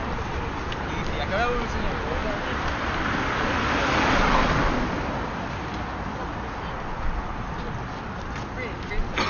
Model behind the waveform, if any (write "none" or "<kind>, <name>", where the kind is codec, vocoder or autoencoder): none